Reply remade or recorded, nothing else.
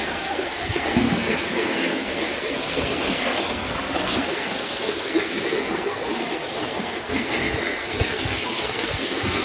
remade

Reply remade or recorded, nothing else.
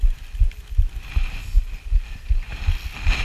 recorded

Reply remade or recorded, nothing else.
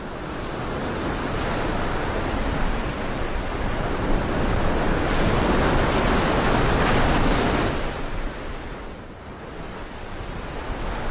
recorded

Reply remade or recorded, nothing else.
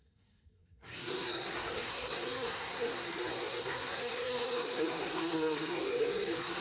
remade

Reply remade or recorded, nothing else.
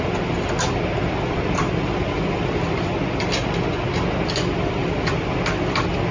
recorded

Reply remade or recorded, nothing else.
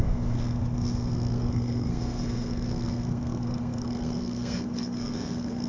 remade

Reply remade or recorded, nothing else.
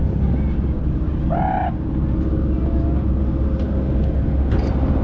recorded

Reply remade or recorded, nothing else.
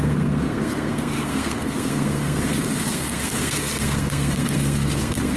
remade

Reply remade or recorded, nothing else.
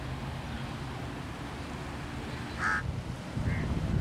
recorded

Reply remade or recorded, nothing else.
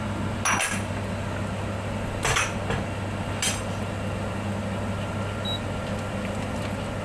recorded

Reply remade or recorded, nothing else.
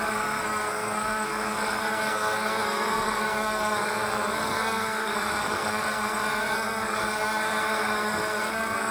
remade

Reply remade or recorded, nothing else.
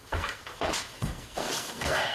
remade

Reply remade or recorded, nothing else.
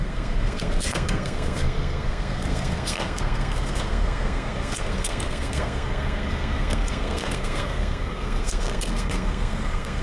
remade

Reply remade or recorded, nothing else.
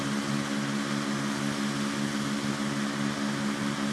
recorded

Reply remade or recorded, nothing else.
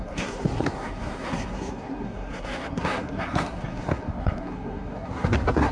remade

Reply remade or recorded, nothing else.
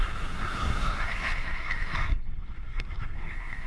remade